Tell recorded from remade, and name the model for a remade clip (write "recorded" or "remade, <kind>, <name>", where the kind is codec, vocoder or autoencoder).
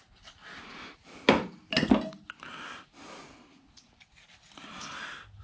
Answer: recorded